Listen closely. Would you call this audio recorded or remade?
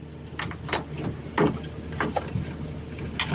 recorded